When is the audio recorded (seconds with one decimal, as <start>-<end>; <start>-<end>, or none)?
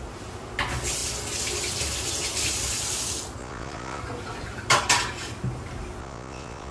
0.0-3.4; 4.0-6.0